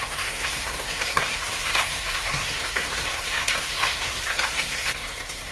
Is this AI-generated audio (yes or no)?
yes